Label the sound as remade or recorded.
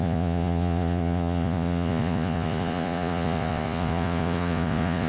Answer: remade